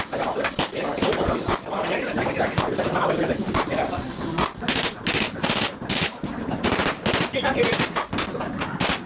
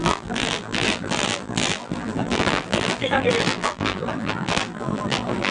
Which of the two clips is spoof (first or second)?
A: second